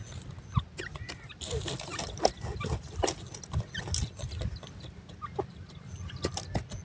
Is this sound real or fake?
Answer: real